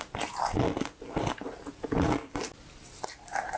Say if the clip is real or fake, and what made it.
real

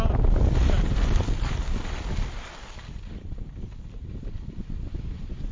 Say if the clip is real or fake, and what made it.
real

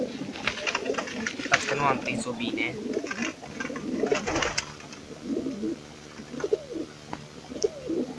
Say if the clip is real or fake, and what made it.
real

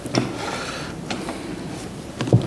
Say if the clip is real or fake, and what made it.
real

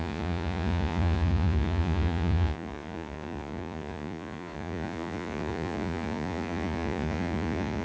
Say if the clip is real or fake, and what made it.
fake, vocoder, Vocos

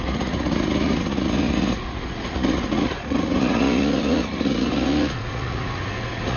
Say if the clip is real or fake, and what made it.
fake, vocoder, Vocos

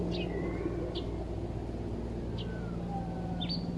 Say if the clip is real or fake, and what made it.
real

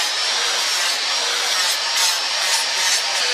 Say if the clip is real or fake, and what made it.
real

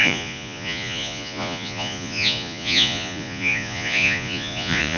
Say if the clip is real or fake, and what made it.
fake, vocoder, Vocos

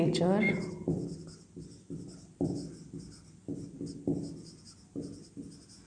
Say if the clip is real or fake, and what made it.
real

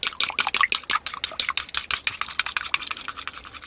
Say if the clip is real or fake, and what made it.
real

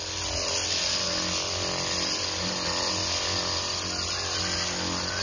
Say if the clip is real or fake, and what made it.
real